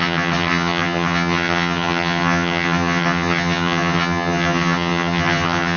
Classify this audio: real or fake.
fake